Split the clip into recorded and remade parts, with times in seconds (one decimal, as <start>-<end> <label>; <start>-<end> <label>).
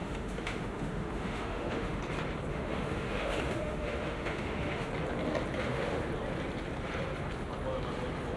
0.0-2.0 remade; 2.0-2.5 recorded; 2.5-4.9 remade; 4.9-5.6 recorded; 5.6-6.1 remade; 6.1-8.4 recorded